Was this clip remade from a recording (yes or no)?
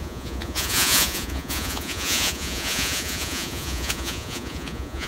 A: yes